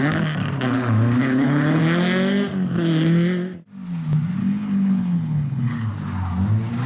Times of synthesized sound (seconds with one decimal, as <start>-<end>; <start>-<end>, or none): 1.2-1.8; 4.4-5.9